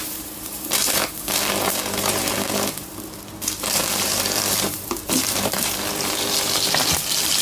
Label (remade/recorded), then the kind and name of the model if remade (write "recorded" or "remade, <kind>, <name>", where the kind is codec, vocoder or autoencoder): remade, vocoder, BigVGAN v2